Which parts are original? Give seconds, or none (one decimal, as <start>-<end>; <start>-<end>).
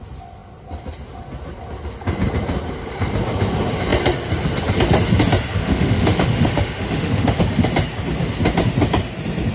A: 0.0-5.6; 7.4-9.5